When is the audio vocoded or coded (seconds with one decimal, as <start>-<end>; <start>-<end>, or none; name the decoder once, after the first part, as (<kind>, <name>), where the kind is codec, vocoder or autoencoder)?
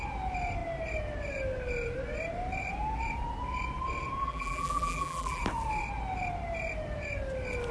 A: 4.2-5.4 (vocoder, BigVGAN v2)